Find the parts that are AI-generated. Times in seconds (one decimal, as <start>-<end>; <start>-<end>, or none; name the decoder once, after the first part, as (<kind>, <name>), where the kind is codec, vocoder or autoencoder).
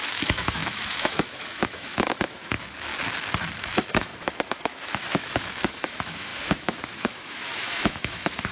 0.0-2.9 (autoencoder, DAC-VAE); 3.6-8.5